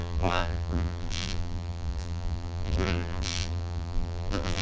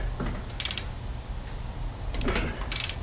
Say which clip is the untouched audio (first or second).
second